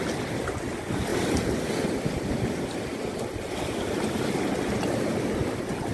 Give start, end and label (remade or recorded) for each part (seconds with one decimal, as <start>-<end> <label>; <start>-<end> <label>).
0.0-5.9 recorded